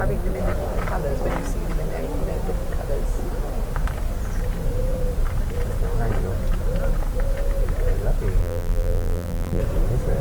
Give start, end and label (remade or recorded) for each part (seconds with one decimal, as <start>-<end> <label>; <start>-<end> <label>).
0.0-8.4 recorded; 8.4-9.6 remade; 9.6-10.2 recorded